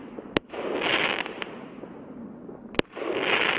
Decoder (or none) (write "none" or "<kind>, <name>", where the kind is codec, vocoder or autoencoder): none